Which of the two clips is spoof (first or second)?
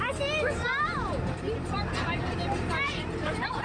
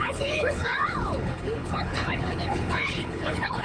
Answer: second